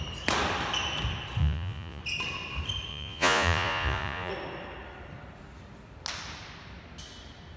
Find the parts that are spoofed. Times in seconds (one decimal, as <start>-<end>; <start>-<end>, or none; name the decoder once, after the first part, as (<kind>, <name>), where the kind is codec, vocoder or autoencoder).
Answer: 1.4-2.0 (vocoder, Vocos); 2.9-4.3